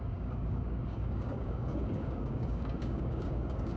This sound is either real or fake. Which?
fake